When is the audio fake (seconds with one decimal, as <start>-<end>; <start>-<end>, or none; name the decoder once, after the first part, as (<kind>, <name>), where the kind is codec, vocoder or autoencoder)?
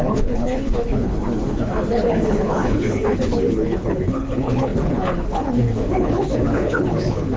0.0-7.4 (codec, HILCodec)